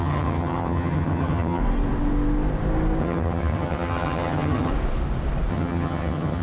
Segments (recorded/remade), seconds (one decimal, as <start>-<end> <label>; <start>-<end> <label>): 0.0-1.6 remade; 1.6-3.0 recorded; 3.0-4.7 remade; 4.7-5.5 recorded; 5.5-6.4 remade